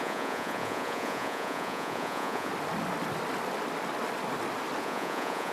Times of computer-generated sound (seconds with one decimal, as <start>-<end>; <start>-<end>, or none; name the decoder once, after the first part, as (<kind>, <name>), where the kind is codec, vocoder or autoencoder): 0.0-2.5 (vocoder, Vocos); 4.8-5.5